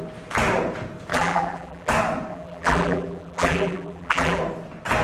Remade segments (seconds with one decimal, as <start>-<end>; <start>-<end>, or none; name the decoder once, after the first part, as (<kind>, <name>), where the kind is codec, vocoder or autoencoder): 1.1-1.9 (vocoder, BigVGAN v2); 2.3-4.4

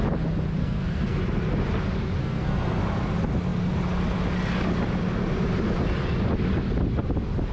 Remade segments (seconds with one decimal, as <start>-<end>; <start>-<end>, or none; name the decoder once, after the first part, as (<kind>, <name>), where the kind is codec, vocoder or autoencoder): 0.6-1.2 (codec, SNAC); 2.2-2.8

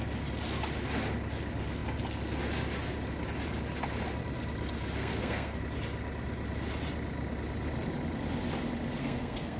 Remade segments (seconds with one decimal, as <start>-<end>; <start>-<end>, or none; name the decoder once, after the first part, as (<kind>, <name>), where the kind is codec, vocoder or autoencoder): 5.0-5.6 (codec, SNAC); 9.0-9.6

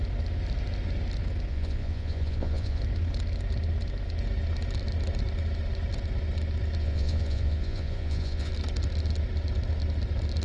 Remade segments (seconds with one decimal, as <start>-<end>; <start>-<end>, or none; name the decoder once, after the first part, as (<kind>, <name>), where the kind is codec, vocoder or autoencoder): 1.5-2.8 (vocoder, Vocos); 6.8-8.5

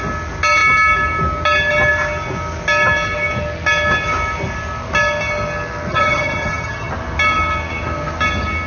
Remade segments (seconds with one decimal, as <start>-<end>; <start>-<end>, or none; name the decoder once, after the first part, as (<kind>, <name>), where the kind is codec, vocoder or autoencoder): 5.9-6.9 (vocoder, HiFi-GAN)

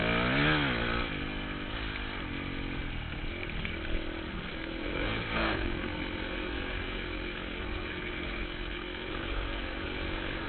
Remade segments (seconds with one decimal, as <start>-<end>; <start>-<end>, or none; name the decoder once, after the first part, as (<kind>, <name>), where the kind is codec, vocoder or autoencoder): 4.3-10.5 (codec, SNAC)

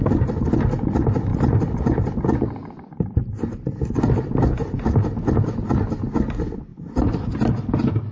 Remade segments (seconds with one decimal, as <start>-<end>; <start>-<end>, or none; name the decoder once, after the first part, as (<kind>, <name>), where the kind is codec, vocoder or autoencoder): none